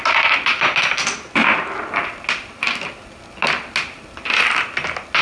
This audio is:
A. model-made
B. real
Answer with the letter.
B